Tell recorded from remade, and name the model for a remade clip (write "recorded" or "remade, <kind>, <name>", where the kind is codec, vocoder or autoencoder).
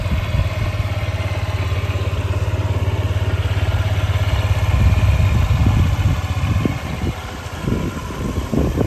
recorded